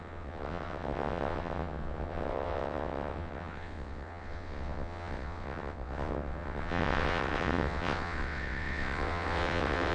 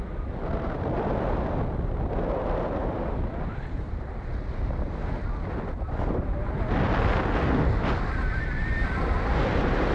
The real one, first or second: second